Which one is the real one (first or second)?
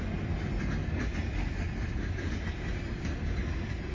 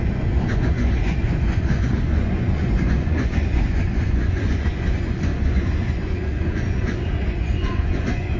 first